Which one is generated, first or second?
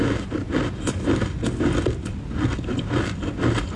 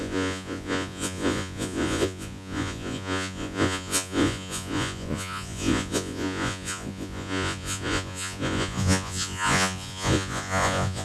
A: second